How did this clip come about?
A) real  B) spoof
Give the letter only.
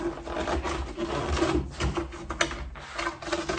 A